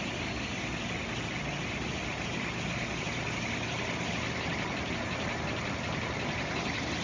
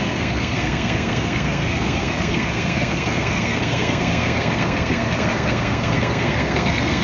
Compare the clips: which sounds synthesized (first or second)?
second